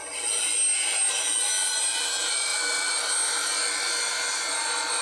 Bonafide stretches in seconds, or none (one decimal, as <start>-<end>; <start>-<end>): 0.0-5.0